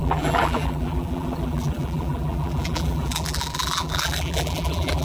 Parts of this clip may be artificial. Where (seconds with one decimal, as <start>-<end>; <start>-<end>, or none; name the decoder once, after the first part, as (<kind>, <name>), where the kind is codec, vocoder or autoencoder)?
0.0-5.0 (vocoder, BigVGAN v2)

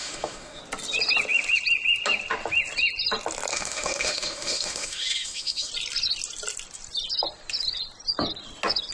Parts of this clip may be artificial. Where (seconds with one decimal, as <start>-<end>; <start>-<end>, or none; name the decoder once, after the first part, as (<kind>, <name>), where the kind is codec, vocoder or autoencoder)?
0.0-0.6 (autoencoder, DAC-VAE); 3.5-5.7

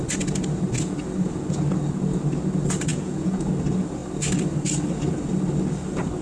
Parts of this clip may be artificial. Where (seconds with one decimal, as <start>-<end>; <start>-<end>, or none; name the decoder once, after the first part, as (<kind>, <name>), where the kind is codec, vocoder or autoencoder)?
2.9-3.5 (vocoder, Vocos)

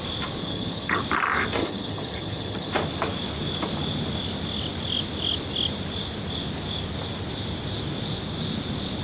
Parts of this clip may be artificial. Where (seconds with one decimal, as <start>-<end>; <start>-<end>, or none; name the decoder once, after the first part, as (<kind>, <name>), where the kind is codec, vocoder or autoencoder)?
0.4-1.0 (vocoder, HiFi-GAN); 1.6-2.7

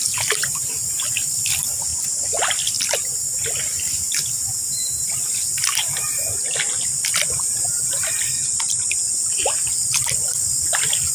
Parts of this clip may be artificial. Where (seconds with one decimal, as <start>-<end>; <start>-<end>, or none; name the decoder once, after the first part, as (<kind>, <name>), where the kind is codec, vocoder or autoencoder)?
none

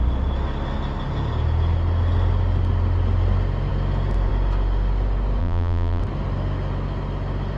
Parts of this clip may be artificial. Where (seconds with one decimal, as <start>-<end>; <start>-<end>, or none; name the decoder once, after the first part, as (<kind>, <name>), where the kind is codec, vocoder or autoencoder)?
5.4-6.0 (vocoder, BigVGAN v2)

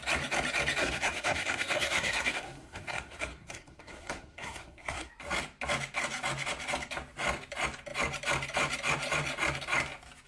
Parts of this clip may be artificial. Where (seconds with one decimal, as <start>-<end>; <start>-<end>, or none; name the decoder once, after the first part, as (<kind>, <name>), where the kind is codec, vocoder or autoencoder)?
0.8-5.1 (codec, SNAC)

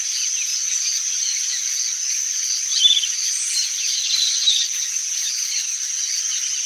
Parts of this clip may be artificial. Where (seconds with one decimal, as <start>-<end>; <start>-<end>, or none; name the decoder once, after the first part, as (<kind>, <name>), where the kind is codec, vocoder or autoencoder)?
none